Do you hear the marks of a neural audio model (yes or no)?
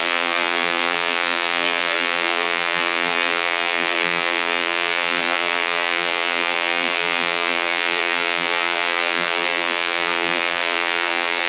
yes